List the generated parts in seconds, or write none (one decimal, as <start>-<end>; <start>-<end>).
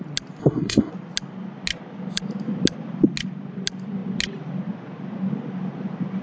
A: 0.4-0.9